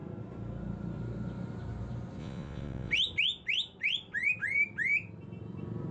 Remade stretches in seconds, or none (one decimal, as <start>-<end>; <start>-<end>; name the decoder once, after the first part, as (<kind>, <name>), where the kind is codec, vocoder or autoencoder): 2.2-2.9 (vocoder, Vocos)